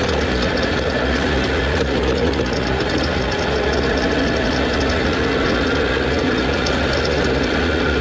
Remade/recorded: remade